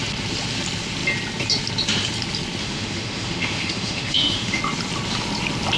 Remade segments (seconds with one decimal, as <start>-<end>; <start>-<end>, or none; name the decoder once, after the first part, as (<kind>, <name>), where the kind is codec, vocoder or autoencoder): 2.6-4.6 (autoencoder, DAC-VAE)

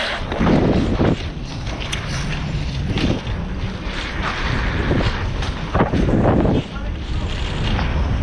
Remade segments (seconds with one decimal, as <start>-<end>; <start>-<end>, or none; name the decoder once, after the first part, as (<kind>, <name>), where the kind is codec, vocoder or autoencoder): none

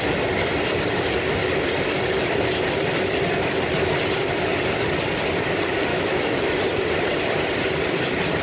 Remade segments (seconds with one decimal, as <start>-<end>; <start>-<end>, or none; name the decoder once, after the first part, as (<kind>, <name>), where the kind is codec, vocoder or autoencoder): 5.9-6.6 (autoencoder, DAC-VAE)

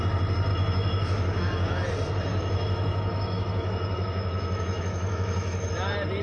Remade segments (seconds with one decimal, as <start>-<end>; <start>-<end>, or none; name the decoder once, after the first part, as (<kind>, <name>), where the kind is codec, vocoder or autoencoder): 0.5-1.9 (autoencoder, DAC-VAE); 2.3-5.7

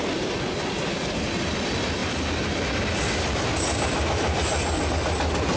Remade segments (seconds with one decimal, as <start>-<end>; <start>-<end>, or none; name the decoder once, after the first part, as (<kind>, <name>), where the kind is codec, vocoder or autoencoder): none

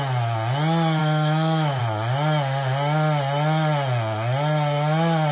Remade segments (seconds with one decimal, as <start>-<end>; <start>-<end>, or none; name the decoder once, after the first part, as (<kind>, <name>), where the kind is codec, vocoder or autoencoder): 1.0-1.8 (autoencoder, DAC-VAE)

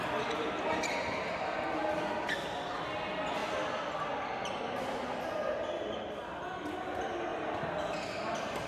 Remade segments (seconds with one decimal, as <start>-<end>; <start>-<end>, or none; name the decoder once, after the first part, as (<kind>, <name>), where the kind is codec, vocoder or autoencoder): none

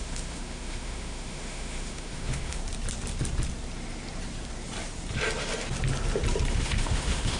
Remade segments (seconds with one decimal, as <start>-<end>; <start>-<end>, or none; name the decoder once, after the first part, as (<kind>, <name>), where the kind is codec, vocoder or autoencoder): 0.0-2.6 (autoencoder, DAC-VAE); 6.5-7.4